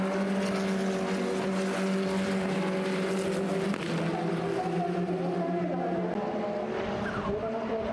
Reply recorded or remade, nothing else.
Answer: recorded